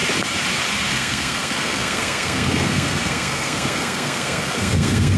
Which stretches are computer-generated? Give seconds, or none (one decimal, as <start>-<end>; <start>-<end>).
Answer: 0.9-5.2